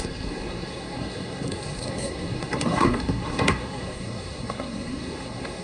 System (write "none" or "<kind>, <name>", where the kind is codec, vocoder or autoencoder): codec, SNAC